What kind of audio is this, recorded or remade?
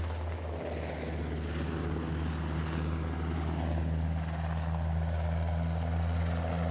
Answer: recorded